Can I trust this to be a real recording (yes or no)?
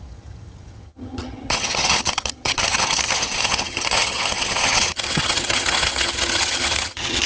no